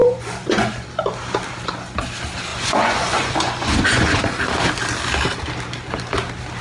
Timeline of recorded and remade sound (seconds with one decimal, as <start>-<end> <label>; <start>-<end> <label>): 0.0-0.9 remade; 0.9-2.5 recorded; 2.5-4.2 remade; 4.2-6.6 recorded